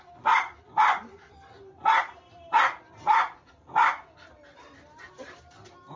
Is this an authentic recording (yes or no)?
no